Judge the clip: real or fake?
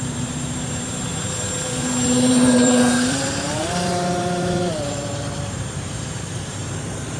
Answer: fake